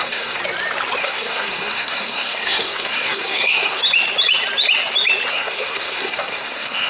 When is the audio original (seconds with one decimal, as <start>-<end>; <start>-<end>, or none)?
0.4-1.0; 3.8-5.3